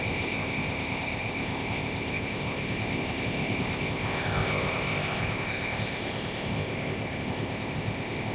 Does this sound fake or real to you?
fake